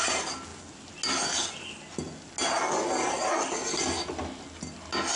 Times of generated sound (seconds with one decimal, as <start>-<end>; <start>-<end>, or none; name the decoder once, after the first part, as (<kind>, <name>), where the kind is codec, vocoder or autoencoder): none